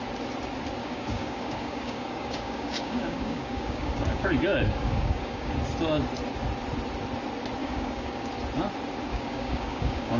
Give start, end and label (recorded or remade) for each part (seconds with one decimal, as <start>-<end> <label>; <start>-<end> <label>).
0.0-0.8 recorded; 0.8-5.5 remade; 5.5-7.6 recorded; 7.6-8.3 remade; 8.3-9.1 recorded; 9.1-10.2 remade